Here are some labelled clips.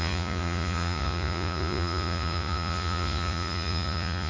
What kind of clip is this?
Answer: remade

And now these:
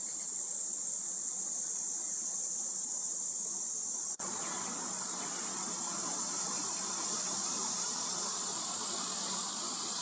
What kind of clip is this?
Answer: remade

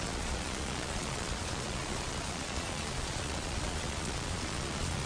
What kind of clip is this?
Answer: remade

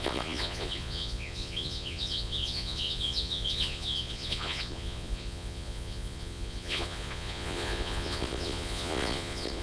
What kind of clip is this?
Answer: remade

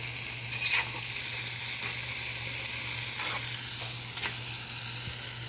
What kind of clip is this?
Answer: recorded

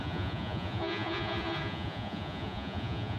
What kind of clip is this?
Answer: remade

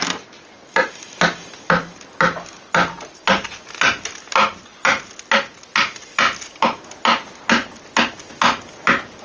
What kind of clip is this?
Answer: recorded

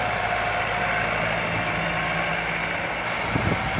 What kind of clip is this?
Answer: recorded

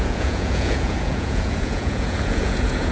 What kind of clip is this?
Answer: remade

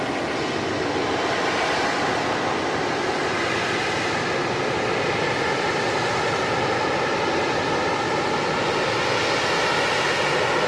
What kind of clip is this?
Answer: recorded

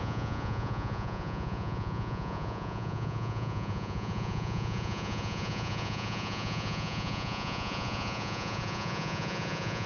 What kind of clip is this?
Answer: remade